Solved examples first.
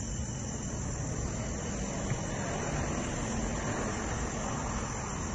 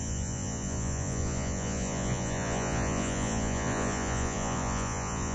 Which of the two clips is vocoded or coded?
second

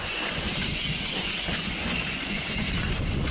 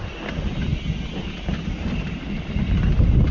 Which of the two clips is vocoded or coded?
first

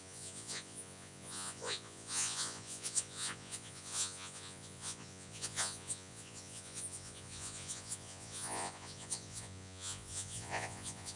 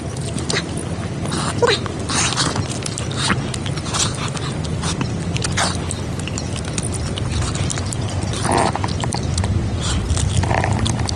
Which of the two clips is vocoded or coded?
first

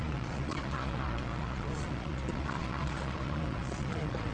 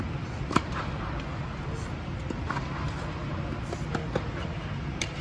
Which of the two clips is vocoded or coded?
first